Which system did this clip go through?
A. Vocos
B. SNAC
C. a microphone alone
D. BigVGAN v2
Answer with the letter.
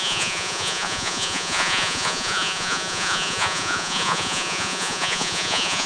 A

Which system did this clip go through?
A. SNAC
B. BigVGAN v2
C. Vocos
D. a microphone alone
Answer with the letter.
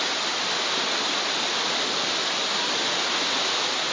D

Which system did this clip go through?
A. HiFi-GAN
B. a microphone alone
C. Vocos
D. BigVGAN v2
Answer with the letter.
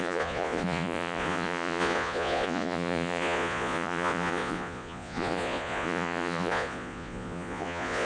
C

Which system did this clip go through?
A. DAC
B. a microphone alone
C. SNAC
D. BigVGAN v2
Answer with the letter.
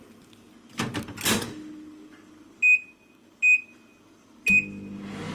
B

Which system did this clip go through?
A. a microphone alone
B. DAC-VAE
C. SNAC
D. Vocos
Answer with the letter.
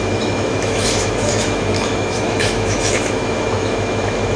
B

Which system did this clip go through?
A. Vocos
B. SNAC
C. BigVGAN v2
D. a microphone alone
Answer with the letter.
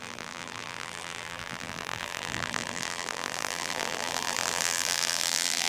C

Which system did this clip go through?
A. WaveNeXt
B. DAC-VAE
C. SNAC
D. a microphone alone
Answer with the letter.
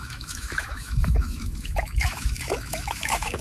B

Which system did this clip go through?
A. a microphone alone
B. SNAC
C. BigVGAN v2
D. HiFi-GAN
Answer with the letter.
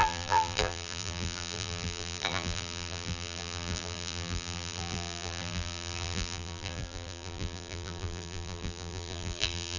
C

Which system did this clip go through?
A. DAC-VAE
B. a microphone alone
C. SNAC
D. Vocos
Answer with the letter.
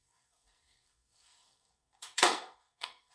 C